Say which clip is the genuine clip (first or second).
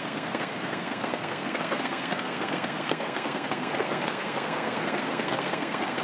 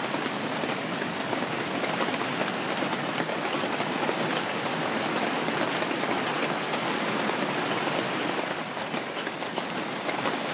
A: second